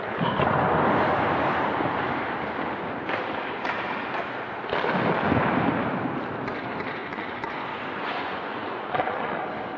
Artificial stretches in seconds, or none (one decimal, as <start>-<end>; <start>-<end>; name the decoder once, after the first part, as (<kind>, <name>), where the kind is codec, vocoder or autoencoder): 7.0-9.4 (vocoder, Vocos)